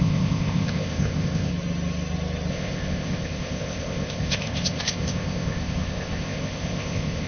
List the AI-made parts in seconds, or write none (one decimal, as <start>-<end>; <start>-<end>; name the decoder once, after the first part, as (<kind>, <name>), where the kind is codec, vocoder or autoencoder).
0.0-1.5 (codec, ZipCodec); 2.5-7.3